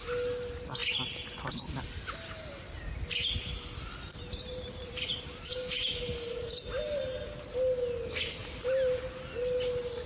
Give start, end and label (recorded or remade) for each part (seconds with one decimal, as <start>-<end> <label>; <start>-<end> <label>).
0.0-4.1 recorded; 4.1-5.9 remade; 5.9-8.4 recorded; 8.4-9.0 remade; 9.0-10.1 recorded